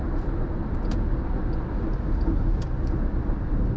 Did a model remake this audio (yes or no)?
yes